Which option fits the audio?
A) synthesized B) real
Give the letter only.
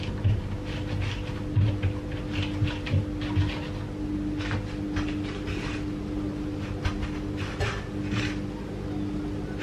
B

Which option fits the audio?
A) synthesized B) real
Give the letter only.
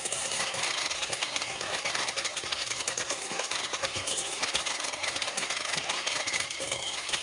A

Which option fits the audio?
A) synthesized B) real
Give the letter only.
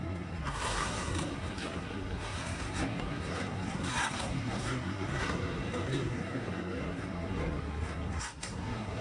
A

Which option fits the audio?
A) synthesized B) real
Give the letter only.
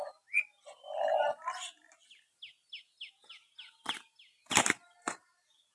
B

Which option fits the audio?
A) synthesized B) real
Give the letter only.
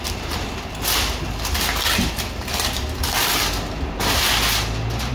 B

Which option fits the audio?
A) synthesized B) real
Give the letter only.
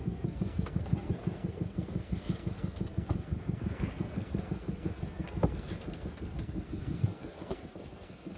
A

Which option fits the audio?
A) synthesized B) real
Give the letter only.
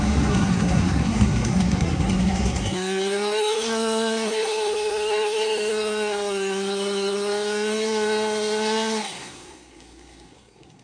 A